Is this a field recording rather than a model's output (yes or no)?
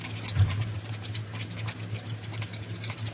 yes